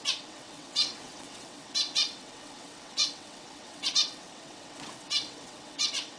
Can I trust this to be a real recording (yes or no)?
no